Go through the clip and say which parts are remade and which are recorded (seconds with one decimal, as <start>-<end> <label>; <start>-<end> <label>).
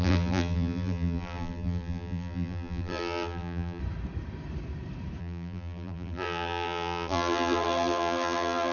0.0-3.8 remade; 3.8-5.2 recorded; 5.2-8.7 remade